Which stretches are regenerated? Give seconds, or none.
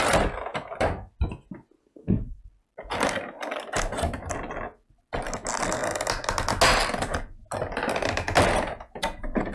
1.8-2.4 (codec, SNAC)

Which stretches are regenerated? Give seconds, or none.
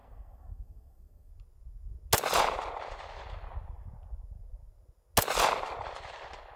0.0-1.3 (codec, SNAC)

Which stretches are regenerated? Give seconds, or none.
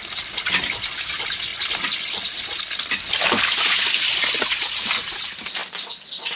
none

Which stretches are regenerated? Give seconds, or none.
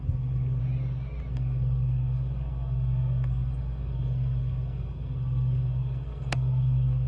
0.0-0.6 (codec, SNAC); 1.3-7.1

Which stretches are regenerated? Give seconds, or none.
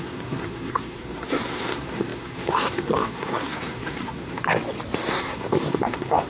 0.0-4.4 (codec, SNAC); 5.1-6.3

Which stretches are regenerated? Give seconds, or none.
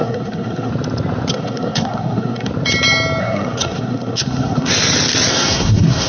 0.0-0.7 (codec, SNAC); 1.3-2.5; 3.2-4.7; 5.3-6.1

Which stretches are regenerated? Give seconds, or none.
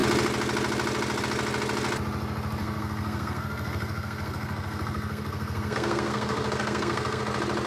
2.6-7.2 (codec, SNAC)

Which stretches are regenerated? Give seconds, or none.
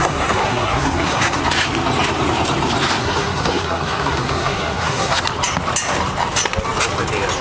0.0-1.4 (codec, SNAC); 3.0-5.2